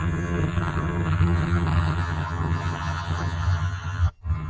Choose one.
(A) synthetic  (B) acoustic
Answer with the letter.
A